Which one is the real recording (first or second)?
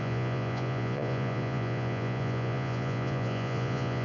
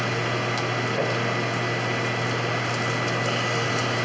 second